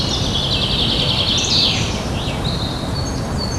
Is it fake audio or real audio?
real